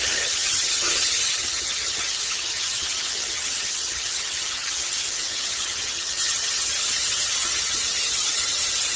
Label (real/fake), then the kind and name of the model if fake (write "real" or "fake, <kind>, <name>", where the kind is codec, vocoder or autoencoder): fake, vocoder, HiFi-GAN